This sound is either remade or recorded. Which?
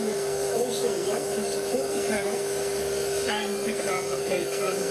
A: remade